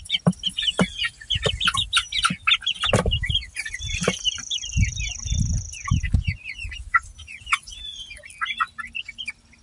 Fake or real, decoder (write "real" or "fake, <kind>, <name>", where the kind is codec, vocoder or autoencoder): real